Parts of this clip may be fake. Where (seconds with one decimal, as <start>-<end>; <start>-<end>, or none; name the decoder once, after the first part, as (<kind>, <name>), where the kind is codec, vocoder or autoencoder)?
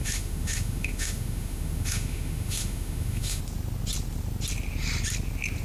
0.0-3.4 (autoencoder, DAC-VAE)